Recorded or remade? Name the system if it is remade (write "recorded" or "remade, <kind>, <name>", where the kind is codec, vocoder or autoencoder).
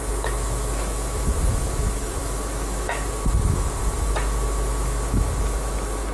remade, autoencoder, DAC-VAE